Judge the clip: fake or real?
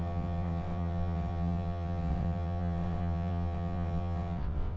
fake